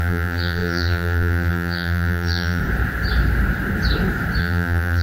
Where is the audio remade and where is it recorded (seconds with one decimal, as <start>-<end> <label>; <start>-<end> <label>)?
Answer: 0.0-2.6 remade; 2.6-4.4 recorded; 4.4-5.0 remade